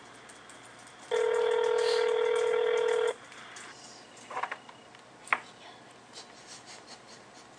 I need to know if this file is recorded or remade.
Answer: recorded